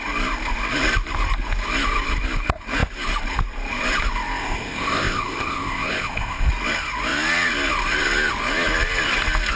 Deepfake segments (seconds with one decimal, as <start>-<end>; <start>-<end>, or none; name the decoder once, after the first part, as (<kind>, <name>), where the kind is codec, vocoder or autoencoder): 4.4-6.5 (codec, ZipCodec)